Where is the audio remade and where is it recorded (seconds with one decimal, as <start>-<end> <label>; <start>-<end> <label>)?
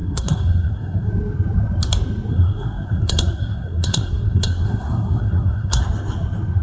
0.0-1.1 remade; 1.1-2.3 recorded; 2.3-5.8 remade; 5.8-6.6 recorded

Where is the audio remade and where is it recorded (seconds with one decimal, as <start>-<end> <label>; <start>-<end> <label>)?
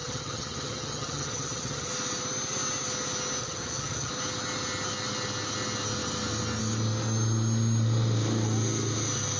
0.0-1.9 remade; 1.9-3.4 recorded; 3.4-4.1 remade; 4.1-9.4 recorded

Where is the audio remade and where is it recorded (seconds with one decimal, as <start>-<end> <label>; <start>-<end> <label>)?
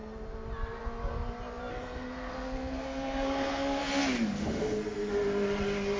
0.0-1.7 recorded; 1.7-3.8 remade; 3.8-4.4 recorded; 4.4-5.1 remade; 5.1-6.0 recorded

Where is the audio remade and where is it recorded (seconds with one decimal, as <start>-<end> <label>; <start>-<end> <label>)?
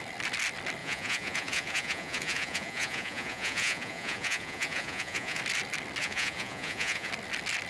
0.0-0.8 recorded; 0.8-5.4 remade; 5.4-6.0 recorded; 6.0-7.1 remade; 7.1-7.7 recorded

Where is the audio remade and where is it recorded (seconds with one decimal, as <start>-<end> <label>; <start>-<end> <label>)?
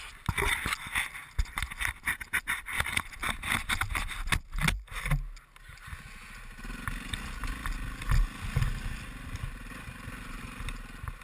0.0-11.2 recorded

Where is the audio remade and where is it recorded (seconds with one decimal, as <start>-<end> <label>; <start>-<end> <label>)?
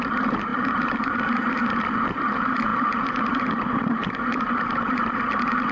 0.0-5.7 remade